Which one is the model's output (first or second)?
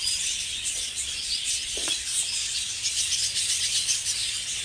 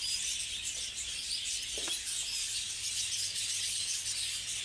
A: first